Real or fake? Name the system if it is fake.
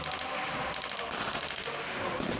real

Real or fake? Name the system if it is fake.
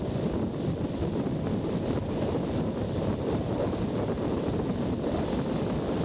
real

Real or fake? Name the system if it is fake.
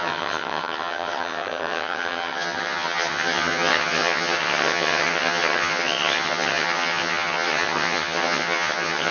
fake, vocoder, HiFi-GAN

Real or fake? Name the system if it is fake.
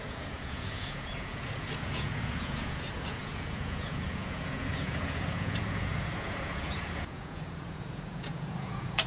fake, vocoder, Vocos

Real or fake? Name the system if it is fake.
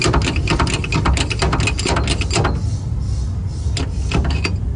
real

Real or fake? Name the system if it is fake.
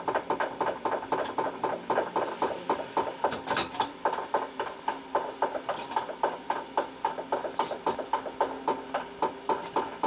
real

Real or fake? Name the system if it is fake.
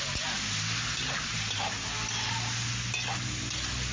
real